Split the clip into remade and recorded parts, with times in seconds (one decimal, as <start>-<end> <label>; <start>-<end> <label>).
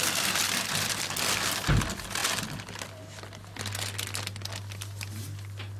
0.0-5.8 recorded